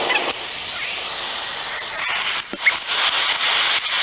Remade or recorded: recorded